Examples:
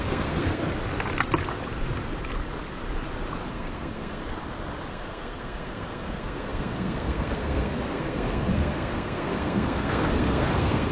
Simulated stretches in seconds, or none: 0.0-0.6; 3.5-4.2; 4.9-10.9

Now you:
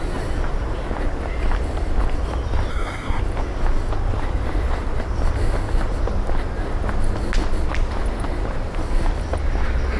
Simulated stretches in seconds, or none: 2.7-3.2

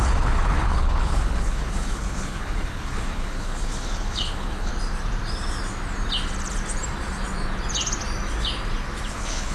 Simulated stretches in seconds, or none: 0.0-4.7; 9.1-9.5

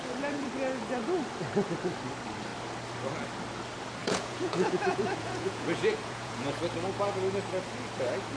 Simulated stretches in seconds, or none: 4.0-6.6